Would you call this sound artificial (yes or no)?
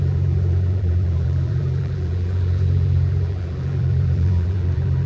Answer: yes